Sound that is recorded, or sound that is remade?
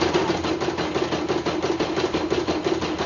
recorded